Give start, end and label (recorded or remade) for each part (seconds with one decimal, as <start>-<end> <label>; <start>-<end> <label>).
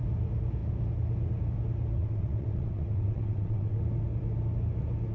0.0-2.0 recorded; 2.0-3.8 remade; 3.8-5.1 recorded